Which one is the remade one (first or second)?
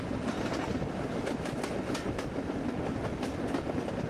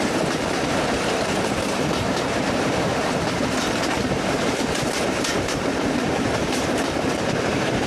second